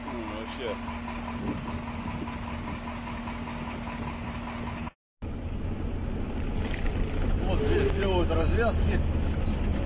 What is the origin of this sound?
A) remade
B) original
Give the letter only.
B